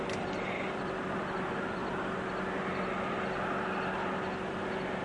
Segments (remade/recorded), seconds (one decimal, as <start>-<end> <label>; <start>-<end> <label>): 0.0-5.0 recorded